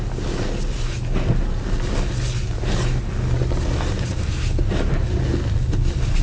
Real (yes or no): yes